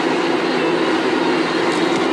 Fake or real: real